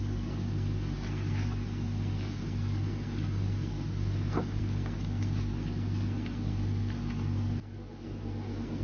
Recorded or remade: remade